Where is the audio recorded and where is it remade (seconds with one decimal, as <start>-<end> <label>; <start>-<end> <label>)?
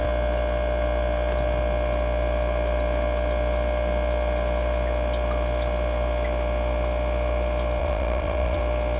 0.0-7.8 recorded; 7.8-8.6 remade; 8.6-9.0 recorded